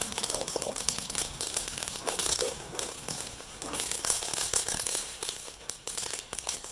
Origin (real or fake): fake